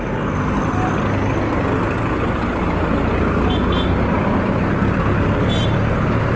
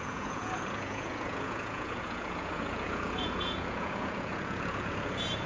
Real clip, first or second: first